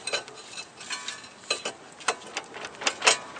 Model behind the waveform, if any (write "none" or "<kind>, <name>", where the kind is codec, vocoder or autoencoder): none